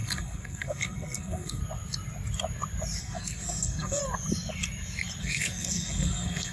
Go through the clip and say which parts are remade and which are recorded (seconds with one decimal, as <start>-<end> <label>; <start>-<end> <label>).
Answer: 0.0-1.6 remade; 1.6-3.0 recorded; 3.0-4.0 remade; 4.0-5.2 recorded; 5.2-6.5 remade

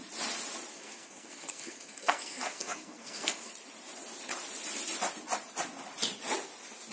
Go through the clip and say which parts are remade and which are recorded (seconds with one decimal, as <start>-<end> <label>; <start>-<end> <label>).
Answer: 0.0-0.7 recorded; 0.7-3.5 remade; 3.5-6.9 recorded

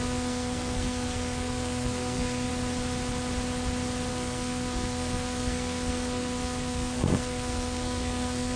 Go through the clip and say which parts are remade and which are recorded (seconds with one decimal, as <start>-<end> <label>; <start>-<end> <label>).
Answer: 0.0-2.5 remade; 2.5-4.1 recorded; 4.1-8.6 remade

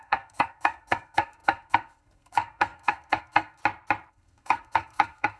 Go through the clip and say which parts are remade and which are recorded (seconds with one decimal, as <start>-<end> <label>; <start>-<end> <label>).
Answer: 0.0-3.6 remade; 3.6-4.1 recorded; 4.1-5.4 remade